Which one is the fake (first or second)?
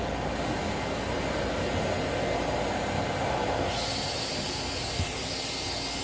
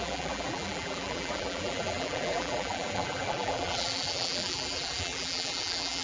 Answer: second